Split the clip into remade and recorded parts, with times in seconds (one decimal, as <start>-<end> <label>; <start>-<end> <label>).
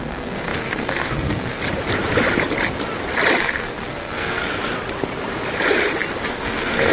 0.0-1.6 remade; 1.6-3.4 recorded; 3.4-4.4 remade; 4.4-6.3 recorded; 6.3-6.9 remade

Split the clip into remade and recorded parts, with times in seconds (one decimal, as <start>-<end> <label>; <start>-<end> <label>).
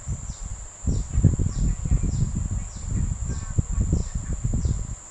0.0-5.1 recorded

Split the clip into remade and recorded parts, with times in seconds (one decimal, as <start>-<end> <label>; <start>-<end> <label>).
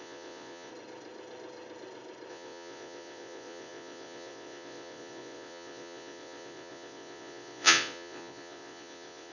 0.0-0.7 remade; 0.7-2.3 recorded; 2.3-9.3 remade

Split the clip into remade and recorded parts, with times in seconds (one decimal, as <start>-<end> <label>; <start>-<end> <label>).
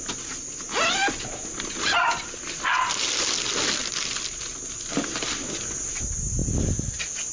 0.0-7.3 recorded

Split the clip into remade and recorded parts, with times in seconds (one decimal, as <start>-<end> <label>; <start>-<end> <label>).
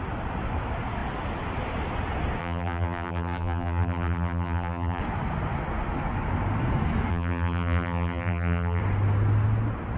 0.0-2.4 recorded; 2.4-5.0 remade; 5.0-7.1 recorded; 7.1-8.8 remade; 8.8-10.0 recorded